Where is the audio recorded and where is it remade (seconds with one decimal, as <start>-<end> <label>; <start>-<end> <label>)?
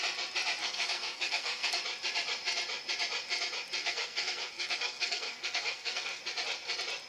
0.0-0.6 recorded; 0.6-1.8 remade; 1.8-3.8 recorded; 3.8-6.2 remade; 6.2-7.1 recorded